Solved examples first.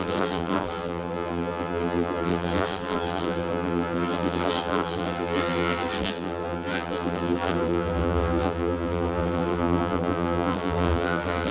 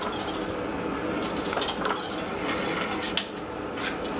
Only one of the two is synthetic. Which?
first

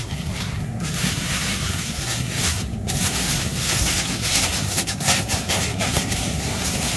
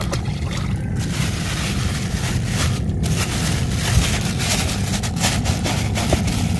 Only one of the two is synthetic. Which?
first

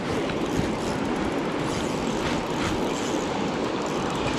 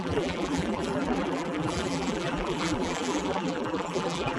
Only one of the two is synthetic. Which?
second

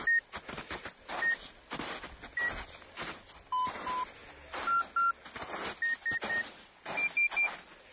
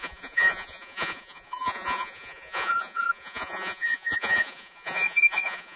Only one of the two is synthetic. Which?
second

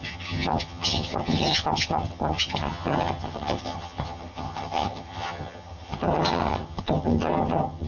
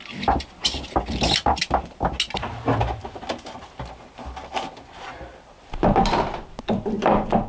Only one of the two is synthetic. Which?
first